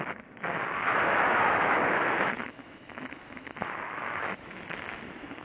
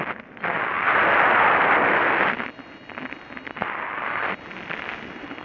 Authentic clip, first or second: second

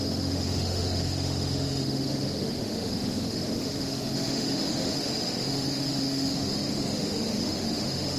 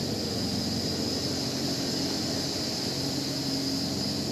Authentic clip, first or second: second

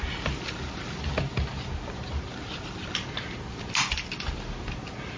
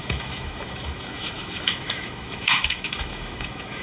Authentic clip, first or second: first